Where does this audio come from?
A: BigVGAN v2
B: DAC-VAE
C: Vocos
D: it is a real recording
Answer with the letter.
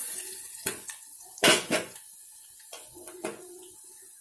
C